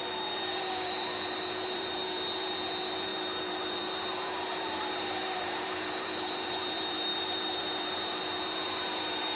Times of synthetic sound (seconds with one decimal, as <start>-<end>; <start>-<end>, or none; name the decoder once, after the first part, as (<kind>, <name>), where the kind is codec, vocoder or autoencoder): 0.0-9.4 (vocoder, BigVGAN v2)